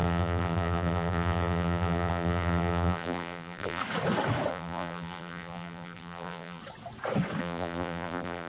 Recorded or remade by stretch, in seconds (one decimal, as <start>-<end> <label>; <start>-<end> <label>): 0.0-3.8 remade; 3.8-4.5 recorded; 4.5-6.6 remade; 6.6-7.4 recorded; 7.4-8.5 remade